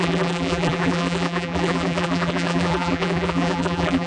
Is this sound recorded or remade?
remade